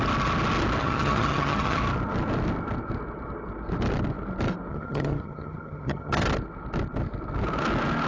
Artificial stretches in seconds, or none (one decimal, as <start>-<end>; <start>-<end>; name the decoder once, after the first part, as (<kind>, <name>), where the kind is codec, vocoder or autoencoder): 0.8-1.8 (vocoder, HiFi-GAN); 4.7-6.2